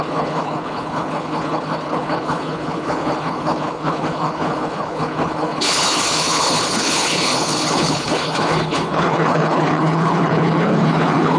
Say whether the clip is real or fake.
fake